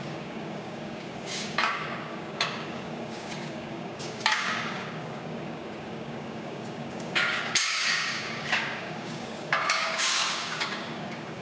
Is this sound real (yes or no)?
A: no